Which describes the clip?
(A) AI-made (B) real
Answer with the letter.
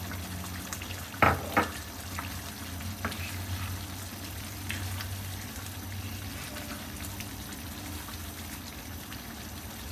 B